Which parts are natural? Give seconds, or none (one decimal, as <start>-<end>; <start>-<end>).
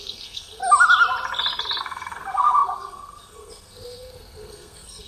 0.6-1.8